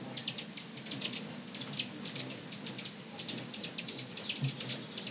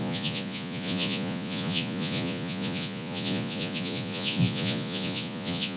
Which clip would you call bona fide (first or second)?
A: first